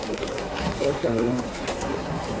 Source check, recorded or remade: remade